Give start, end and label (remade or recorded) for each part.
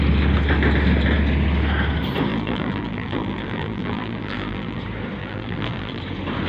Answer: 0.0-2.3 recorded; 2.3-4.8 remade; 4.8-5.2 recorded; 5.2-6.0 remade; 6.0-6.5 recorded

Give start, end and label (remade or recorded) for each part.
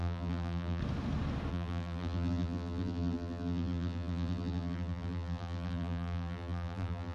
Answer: 0.0-0.8 remade; 0.8-1.5 recorded; 1.5-7.1 remade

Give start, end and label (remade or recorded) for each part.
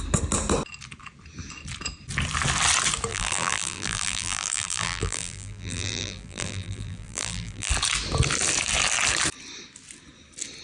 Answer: 0.0-3.1 recorded; 3.1-7.7 remade; 7.7-10.6 recorded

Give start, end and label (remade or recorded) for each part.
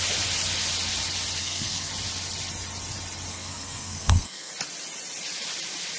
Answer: 0.0-1.4 recorded; 1.4-1.9 remade; 1.9-3.3 recorded; 3.3-4.5 remade; 4.5-6.0 recorded